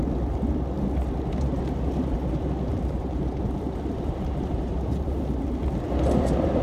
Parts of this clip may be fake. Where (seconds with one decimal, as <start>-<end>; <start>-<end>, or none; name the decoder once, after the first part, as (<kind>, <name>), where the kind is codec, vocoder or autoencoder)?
2.7-5.1 (vocoder, BigVGAN v2)